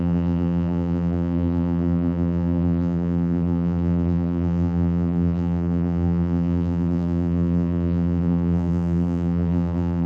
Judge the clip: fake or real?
fake